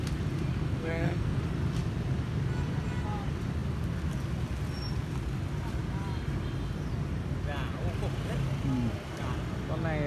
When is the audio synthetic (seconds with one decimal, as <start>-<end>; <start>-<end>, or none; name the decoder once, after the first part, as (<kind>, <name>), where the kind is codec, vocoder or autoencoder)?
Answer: 0.5-1.4 (codec, SNAC)